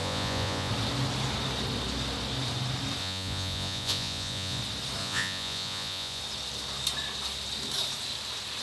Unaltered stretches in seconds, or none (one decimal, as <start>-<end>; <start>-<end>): 0.7-3.0; 4.6-5.0; 6.2-8.6